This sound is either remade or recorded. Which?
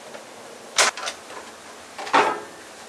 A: recorded